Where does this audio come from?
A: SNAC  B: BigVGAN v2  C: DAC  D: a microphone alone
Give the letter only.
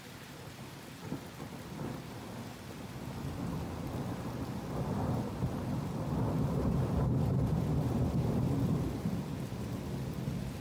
D